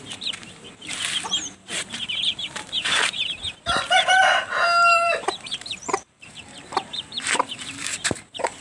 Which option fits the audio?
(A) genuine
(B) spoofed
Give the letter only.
B